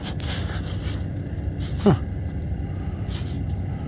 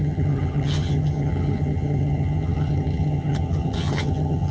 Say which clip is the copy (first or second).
second